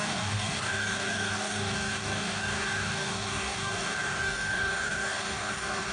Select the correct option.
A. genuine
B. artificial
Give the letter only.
B